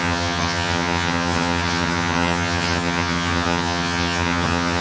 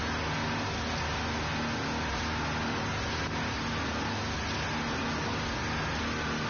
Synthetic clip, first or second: first